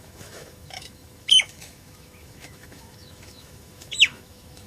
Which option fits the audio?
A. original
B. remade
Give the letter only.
B